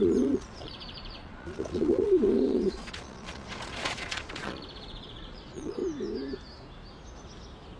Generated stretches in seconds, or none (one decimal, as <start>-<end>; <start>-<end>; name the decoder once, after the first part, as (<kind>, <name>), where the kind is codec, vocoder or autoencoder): 0.0-5.8 (vocoder, Vocos)